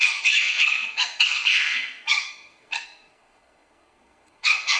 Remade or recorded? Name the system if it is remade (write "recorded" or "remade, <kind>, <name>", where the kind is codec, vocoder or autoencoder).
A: remade, codec, SNAC